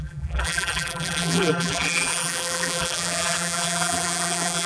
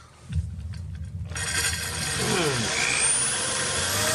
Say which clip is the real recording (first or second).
second